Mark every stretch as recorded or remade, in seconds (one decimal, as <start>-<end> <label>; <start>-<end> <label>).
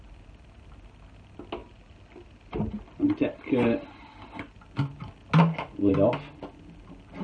0.0-7.2 recorded